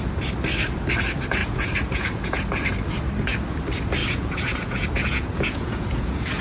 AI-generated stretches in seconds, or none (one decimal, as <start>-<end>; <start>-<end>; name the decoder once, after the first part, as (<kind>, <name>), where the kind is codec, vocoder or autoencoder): 1.4-2.4 (vocoder, Vocos); 4.0-6.4